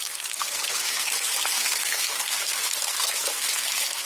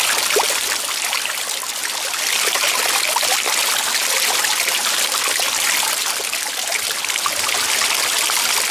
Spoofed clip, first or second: first